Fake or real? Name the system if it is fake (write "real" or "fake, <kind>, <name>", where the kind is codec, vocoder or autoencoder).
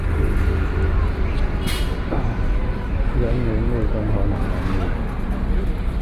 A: real